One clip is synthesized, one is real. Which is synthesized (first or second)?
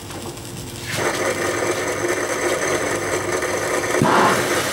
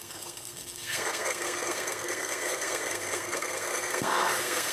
second